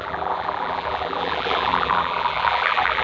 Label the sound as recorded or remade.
remade